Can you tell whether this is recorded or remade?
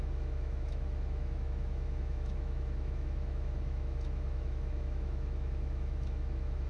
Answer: remade